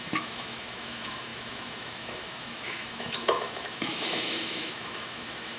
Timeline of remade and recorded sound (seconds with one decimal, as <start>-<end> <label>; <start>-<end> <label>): 0.0-5.6 remade